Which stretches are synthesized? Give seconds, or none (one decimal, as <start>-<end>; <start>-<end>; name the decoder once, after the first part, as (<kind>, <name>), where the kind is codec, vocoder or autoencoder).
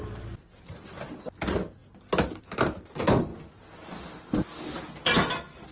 none